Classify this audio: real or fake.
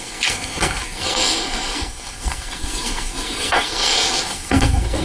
fake